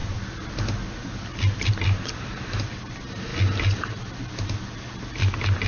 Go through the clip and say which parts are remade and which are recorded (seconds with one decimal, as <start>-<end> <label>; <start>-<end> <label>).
0.0-5.7 recorded